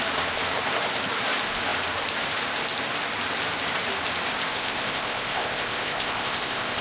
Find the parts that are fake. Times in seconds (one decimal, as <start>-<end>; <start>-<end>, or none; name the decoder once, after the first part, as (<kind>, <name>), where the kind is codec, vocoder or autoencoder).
4.5-6.8 (codec, ZipCodec)